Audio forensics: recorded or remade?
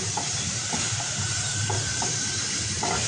remade